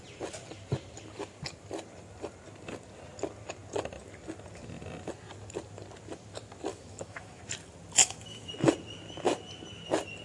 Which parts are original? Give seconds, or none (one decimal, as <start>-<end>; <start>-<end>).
0.0-6.7; 7.4-8.0; 8.5-10.2